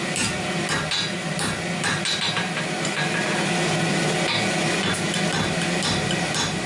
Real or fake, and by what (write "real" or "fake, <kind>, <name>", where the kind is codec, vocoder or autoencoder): real